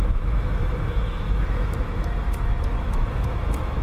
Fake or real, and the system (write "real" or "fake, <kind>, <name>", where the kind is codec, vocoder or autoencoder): fake, autoencoder, DAC-VAE